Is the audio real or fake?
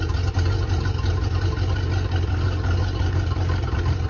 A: real